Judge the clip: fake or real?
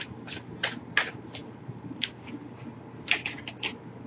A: real